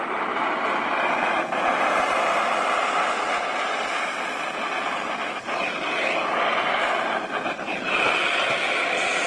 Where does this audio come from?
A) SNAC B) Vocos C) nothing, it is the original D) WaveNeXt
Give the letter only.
C